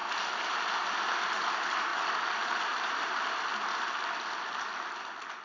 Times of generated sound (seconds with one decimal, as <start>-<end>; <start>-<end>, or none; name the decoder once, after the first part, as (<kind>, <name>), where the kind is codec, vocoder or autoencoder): none